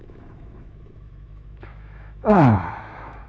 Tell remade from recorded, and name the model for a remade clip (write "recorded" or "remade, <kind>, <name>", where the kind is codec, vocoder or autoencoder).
remade, autoencoder, DAC-VAE